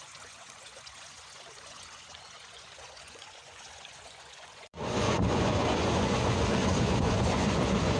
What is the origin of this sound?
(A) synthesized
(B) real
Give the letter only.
A